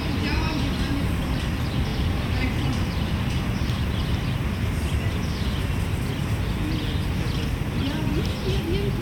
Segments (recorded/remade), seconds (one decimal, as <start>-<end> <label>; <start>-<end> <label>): 0.0-1.9 recorded; 1.9-4.1 remade; 4.1-9.0 recorded